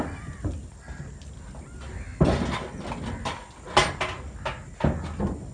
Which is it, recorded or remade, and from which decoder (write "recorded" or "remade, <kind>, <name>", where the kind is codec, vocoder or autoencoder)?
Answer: recorded